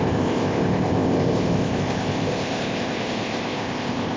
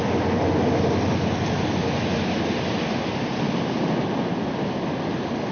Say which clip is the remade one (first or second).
first